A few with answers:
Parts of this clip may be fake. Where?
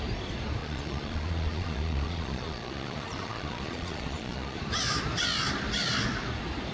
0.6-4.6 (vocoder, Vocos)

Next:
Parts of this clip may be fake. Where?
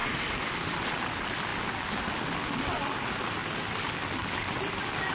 none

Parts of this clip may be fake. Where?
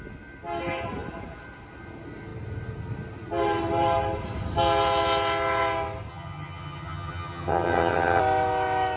6.1-8.2 (vocoder, HiFi-GAN)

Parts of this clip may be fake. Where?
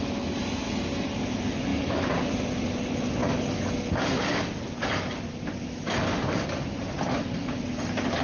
1.7-2.6 (vocoder, BigVGAN v2)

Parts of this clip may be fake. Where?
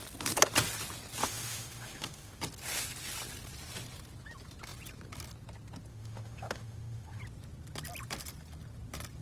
1.2-2.4 (autoencoder, DAC-VAE); 5.9-7.2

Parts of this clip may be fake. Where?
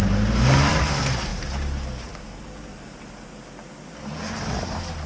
none